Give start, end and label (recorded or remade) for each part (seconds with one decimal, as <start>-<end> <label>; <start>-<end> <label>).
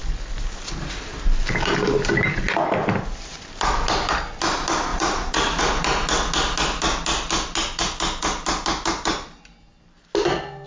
0.0-4.9 recorded; 4.9-5.6 remade; 5.6-10.7 recorded